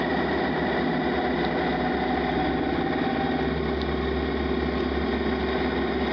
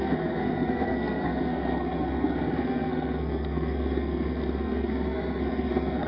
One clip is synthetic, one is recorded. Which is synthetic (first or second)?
second